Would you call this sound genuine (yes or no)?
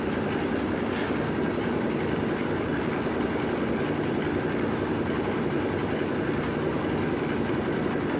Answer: yes